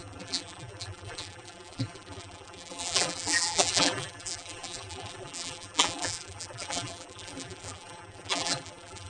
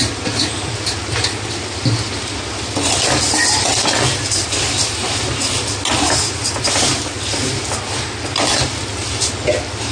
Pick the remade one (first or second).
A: first